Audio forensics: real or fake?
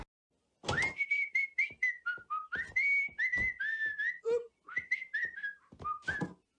real